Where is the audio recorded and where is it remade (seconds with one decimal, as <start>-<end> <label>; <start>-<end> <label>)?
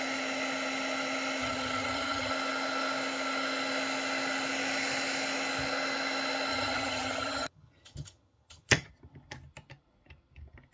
0.0-1.4 recorded; 1.4-2.3 remade; 2.3-6.5 recorded; 6.5-8.9 remade; 8.9-10.7 recorded